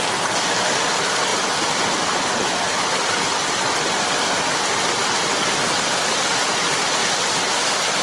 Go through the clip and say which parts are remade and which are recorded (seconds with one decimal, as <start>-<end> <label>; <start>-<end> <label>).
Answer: 0.0-8.0 recorded